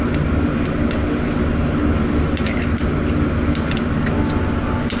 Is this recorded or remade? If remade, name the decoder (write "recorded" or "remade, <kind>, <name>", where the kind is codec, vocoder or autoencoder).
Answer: recorded